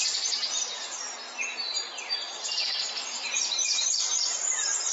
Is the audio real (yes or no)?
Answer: no